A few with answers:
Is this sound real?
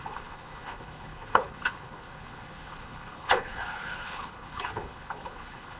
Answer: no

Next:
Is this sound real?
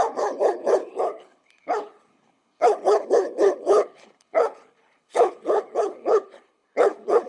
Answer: no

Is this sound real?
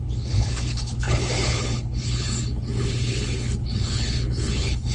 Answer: no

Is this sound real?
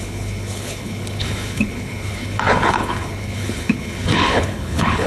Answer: no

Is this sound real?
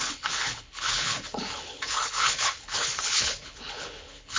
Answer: no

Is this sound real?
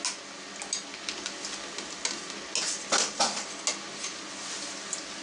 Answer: yes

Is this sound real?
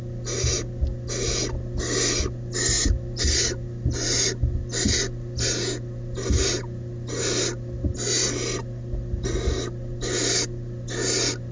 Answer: yes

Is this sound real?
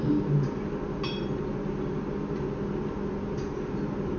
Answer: yes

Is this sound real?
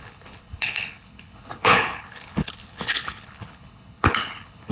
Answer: no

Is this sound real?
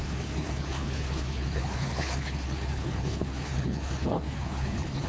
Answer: no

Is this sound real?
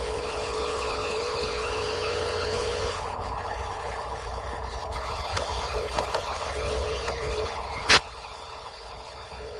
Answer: no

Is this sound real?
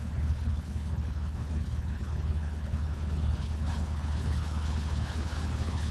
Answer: no